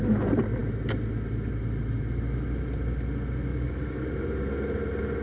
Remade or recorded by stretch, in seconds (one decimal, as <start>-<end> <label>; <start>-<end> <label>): 0.0-3.5 recorded; 3.5-4.0 remade; 4.0-5.2 recorded